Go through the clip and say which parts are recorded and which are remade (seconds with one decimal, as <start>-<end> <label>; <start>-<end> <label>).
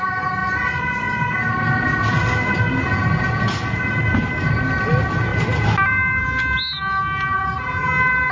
0.0-8.3 recorded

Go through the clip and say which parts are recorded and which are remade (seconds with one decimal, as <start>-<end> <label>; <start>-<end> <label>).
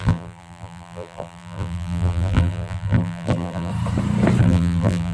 0.0-3.7 remade; 3.7-4.4 recorded; 4.4-5.1 remade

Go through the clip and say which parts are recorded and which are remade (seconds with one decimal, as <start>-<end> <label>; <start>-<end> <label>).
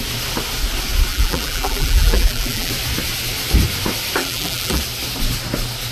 0.0-1.1 recorded; 1.1-2.7 remade; 2.7-4.2 recorded; 4.2-4.8 remade; 4.8-5.9 recorded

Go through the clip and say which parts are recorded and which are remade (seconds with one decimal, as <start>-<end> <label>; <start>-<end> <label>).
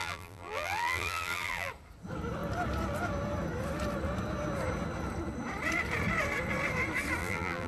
0.0-1.7 remade; 1.7-7.2 recorded; 7.2-7.7 remade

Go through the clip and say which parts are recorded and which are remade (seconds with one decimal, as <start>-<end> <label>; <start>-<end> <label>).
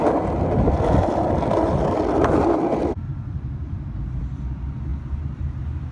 0.0-3.1 recorded; 3.1-4.2 remade; 4.2-5.9 recorded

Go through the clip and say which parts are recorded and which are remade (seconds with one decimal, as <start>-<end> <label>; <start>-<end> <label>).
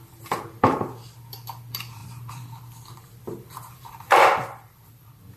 0.0-5.4 remade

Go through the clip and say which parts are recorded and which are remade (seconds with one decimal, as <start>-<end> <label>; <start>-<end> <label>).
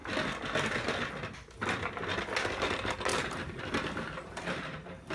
0.0-3.1 recorded; 3.1-3.9 remade; 3.9-5.1 recorded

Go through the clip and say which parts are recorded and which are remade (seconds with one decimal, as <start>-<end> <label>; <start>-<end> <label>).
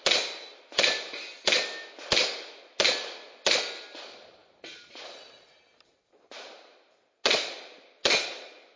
0.0-8.8 recorded